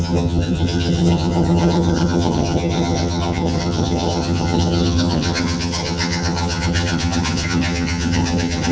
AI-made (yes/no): yes